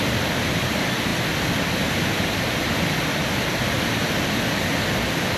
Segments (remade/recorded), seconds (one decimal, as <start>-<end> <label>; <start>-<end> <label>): 0.0-4.7 recorded; 4.7-5.4 remade